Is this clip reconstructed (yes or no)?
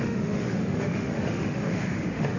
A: yes